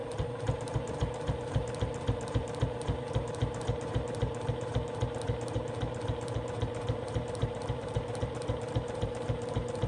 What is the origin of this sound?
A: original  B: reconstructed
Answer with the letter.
B